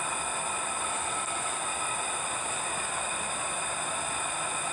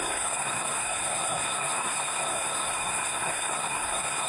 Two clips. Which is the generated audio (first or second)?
second